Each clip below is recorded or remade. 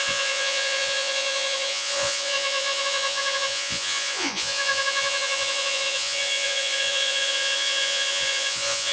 remade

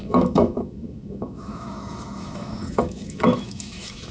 remade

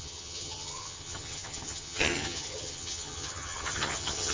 remade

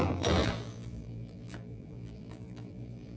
remade